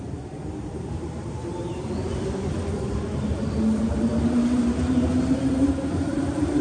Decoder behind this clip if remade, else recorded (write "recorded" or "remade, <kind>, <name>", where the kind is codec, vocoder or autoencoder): remade, vocoder, BigVGAN v2